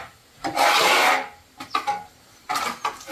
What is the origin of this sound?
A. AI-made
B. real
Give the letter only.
B